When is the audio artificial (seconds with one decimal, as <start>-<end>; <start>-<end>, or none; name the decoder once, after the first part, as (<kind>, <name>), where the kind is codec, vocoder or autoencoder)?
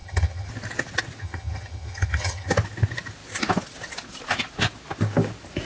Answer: 0.0-0.5 (vocoder, HiFi-GAN); 1.2-2.5